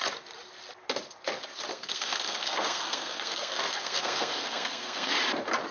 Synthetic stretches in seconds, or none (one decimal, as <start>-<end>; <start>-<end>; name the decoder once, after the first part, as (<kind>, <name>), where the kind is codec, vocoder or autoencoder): 1.7-5.1 (codec, SNAC)